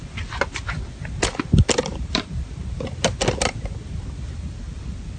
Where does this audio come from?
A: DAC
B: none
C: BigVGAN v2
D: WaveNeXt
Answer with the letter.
B